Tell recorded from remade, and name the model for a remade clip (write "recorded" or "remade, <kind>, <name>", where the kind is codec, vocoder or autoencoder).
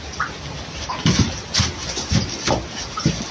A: recorded